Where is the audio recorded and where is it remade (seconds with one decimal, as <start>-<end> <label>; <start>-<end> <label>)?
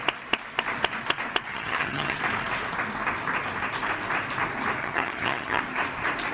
0.0-1.5 recorded; 1.5-2.2 remade; 2.2-4.8 recorded; 4.8-5.6 remade; 5.6-6.3 recorded